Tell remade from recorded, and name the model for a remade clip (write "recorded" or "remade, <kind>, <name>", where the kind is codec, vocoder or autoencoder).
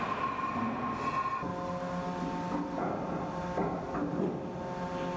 recorded